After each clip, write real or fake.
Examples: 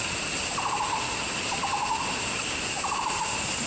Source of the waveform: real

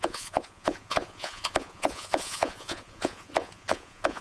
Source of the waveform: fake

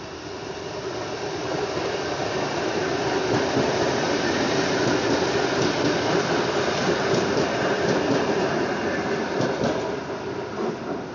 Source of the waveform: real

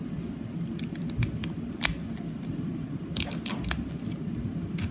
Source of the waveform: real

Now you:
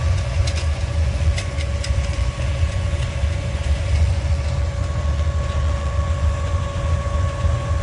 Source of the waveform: fake